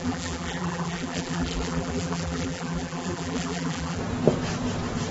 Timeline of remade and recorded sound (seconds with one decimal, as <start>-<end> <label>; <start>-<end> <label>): 0.0-4.0 remade; 4.0-5.1 recorded